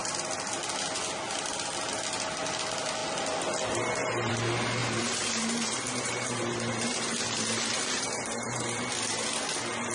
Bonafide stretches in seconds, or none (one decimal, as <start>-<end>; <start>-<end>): 0.0-4.8; 8.8-9.9